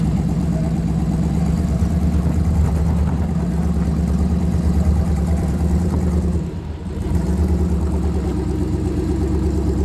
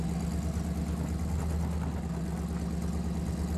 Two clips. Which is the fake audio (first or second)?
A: first